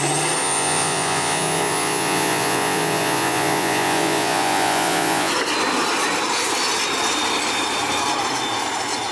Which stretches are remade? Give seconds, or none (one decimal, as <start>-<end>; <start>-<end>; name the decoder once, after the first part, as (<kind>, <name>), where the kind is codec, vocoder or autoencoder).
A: 0.4-5.3 (vocoder, Vocos)